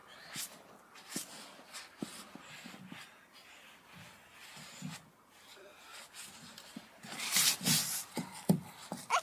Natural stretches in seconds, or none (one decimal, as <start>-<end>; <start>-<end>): 0.0-9.2